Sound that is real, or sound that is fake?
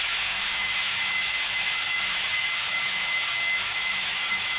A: fake